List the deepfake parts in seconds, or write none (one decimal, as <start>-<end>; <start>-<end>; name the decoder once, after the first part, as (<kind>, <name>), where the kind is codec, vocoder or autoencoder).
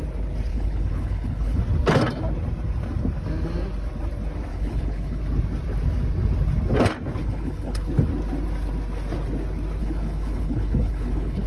0.5-1.6 (codec, HILCodec); 4.5-5.2; 7.2-7.9; 9.8-11.5